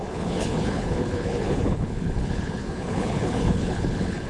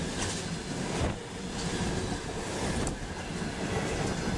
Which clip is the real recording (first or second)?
second